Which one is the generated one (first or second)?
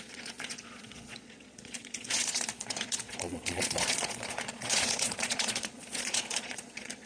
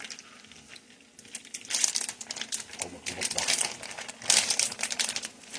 first